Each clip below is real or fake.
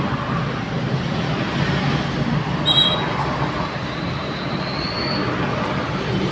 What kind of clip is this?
real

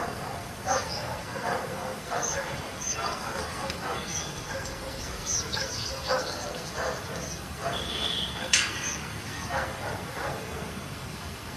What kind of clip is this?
fake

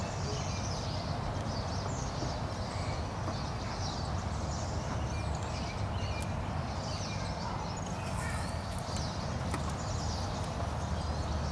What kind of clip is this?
real